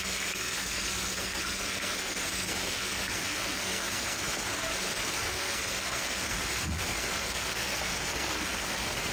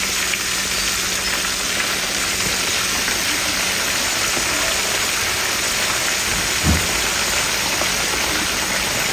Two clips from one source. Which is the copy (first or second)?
first